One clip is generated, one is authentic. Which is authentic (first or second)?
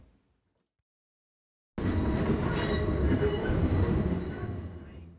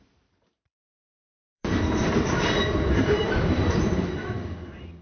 first